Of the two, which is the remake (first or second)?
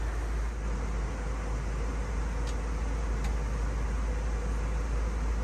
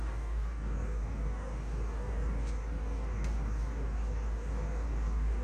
second